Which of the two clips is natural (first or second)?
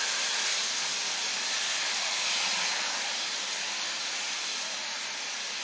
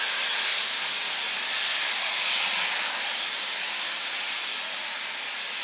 second